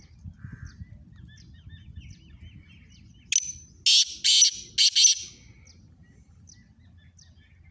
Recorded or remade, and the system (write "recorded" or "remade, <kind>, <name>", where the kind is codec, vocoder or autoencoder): recorded